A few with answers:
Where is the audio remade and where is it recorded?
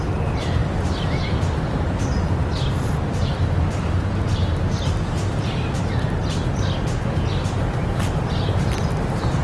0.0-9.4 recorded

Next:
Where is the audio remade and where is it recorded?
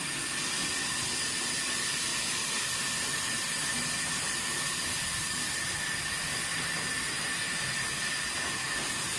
0.0-9.2 recorded